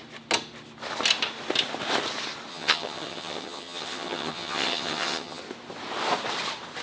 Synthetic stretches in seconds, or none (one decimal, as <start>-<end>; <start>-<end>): 2.5-5.4